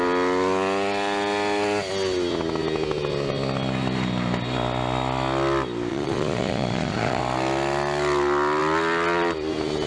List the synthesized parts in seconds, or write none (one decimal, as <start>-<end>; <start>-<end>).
5.9-7.2